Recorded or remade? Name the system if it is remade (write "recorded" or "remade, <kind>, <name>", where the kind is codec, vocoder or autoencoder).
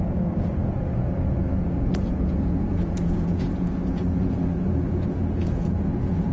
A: remade, vocoder, Vocos